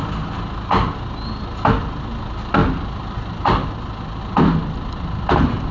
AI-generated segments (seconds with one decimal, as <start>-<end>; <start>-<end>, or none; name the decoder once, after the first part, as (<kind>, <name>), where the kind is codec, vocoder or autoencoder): none